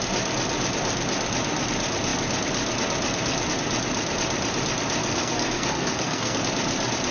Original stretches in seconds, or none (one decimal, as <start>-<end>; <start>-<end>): 0.0-5.0; 6.4-7.1